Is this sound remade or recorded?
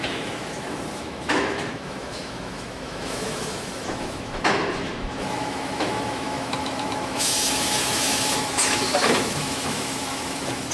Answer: remade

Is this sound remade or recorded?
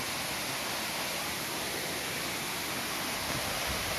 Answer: recorded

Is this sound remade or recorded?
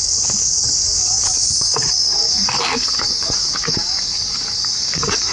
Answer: remade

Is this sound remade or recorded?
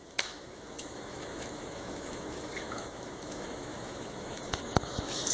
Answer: remade